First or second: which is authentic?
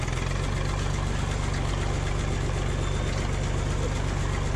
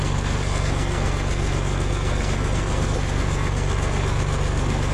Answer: first